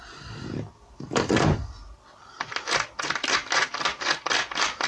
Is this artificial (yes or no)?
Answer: no